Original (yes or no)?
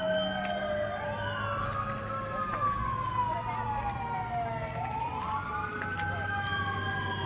yes